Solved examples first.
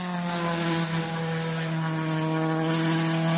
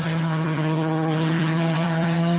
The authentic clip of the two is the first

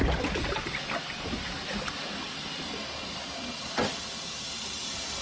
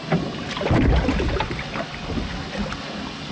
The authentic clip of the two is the second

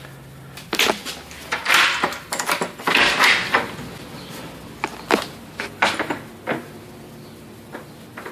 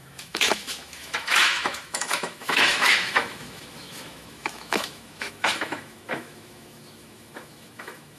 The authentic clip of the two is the first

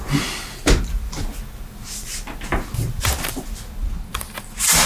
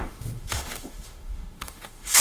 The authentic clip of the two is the first